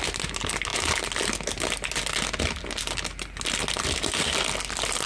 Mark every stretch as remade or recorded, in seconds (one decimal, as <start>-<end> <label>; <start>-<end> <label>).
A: 0.0-5.1 recorded